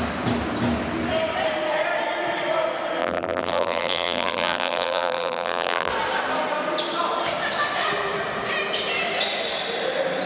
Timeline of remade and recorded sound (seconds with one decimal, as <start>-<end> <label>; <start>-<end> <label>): 0.0-3.0 recorded; 3.0-5.9 remade; 5.9-10.3 recorded